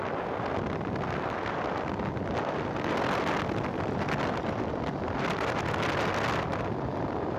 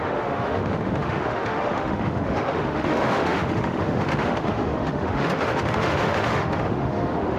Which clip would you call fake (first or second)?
second